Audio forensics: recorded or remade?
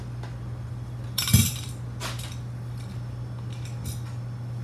recorded